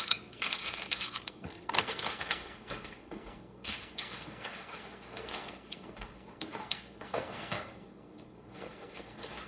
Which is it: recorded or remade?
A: remade